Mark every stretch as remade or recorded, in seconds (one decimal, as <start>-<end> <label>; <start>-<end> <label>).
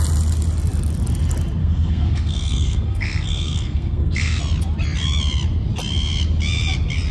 0.0-1.6 recorded; 1.6-4.4 remade; 4.4-7.1 recorded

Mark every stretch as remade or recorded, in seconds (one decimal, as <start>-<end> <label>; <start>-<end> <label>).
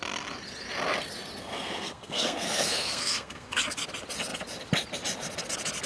0.0-1.4 recorded; 1.4-3.6 remade; 3.6-5.9 recorded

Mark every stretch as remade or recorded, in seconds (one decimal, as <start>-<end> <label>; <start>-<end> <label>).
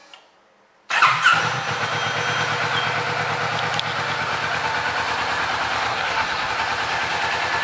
0.0-5.9 recorded; 5.9-6.5 remade; 6.5-7.6 recorded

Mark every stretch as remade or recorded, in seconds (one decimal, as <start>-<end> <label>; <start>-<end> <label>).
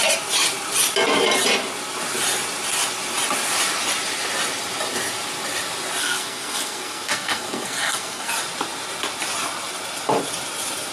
0.0-6.0 recorded; 6.0-8.3 remade; 8.3-10.9 recorded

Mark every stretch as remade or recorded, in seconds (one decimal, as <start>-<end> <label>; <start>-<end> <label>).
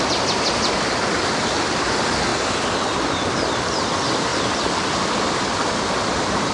0.0-6.5 recorded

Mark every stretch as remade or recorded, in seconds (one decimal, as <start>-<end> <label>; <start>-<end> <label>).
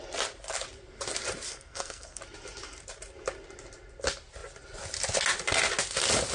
0.0-1.5 recorded; 1.5-2.2 remade; 2.2-6.3 recorded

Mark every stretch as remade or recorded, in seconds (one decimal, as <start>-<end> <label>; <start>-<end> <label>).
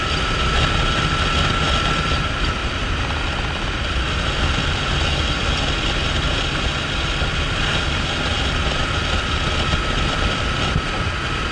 0.0-11.5 recorded